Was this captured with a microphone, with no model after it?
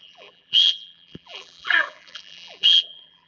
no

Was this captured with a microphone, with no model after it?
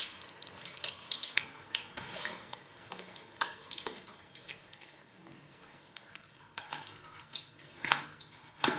no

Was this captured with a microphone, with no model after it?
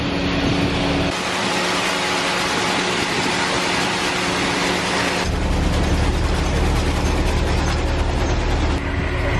yes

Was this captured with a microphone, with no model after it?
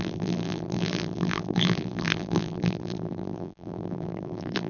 no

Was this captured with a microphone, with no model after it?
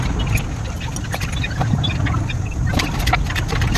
yes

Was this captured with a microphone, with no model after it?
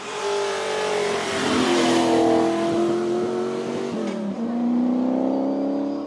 yes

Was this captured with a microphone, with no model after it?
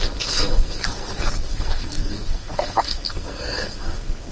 no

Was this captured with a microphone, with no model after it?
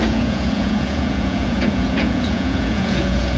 no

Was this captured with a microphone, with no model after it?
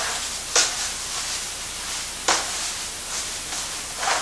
yes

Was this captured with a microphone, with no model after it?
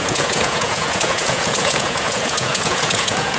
no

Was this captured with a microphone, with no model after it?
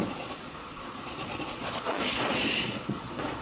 no